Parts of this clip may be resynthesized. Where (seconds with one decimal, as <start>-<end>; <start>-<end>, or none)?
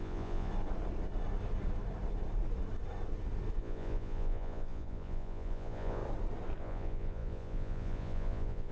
0.0-0.5; 3.6-6.0; 6.6-8.7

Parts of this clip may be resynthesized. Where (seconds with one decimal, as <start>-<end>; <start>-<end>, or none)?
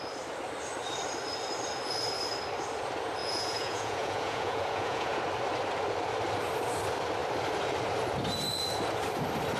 3.2-5.2